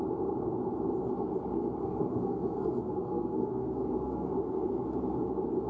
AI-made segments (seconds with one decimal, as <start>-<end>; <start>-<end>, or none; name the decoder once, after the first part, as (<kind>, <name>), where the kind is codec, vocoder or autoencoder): 1.8-4.3 (codec, SNAC)